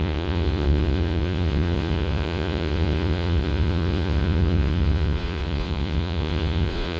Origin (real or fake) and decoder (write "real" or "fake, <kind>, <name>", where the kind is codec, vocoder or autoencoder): fake, vocoder, Vocos